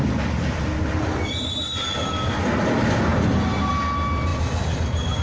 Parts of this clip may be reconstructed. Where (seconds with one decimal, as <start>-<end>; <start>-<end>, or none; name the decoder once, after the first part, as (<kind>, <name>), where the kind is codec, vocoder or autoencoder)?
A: none